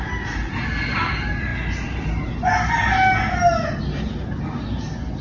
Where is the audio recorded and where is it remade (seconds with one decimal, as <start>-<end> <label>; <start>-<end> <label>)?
0.0-5.2 recorded